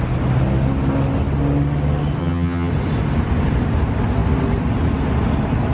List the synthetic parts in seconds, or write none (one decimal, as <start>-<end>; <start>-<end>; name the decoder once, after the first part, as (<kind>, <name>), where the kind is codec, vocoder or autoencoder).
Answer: 2.2-2.7 (vocoder, HiFi-GAN)